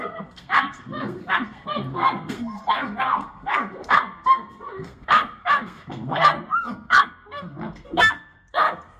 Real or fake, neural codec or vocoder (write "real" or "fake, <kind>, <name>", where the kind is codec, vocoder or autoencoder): fake, codec, SNAC